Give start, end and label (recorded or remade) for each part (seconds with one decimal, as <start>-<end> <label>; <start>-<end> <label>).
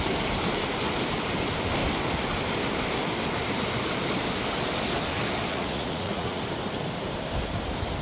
0.0-5.5 recorded; 5.5-6.4 remade; 6.4-8.0 recorded